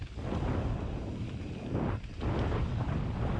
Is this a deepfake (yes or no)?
no